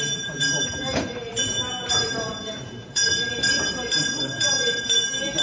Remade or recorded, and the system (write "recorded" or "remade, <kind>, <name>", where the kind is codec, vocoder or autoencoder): remade, vocoder, BigVGAN v2